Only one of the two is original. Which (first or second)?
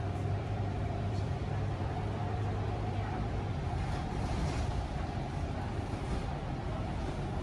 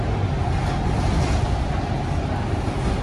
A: second